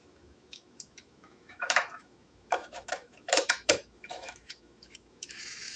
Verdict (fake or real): fake